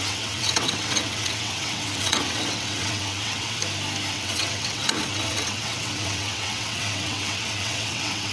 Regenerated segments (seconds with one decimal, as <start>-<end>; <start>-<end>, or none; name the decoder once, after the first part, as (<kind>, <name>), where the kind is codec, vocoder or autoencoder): 0.0-3.6 (vocoder, WaveNeXt); 4.1-8.3